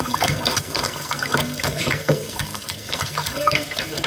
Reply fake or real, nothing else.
fake